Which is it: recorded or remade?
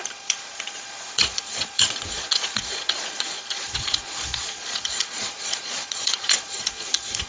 remade